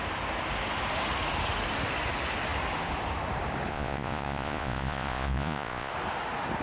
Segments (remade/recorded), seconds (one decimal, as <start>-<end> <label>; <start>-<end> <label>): 0.0-3.7 recorded; 3.7-5.9 remade; 5.9-6.6 recorded